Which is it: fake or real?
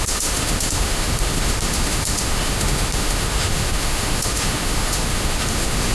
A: fake